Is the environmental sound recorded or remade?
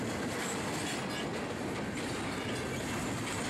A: recorded